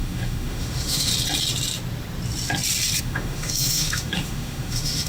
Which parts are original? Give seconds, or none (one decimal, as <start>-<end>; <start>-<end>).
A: 1.1-3.0